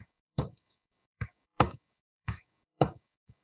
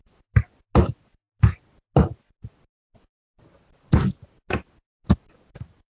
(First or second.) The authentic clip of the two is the second